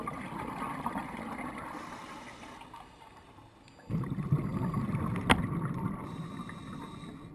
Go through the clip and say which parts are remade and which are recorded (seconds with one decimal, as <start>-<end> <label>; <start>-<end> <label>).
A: 0.0-7.3 recorded